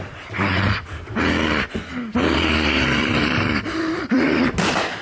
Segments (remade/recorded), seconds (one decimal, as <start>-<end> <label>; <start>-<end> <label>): 0.0-3.0 recorded; 3.0-4.2 remade; 4.2-5.0 recorded